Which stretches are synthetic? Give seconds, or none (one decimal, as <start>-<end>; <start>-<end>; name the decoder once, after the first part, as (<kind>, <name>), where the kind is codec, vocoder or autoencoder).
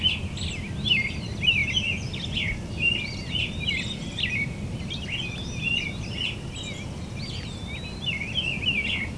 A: none